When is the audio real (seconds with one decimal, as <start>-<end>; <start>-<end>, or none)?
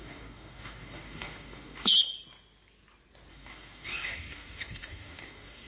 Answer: 1.9-3.3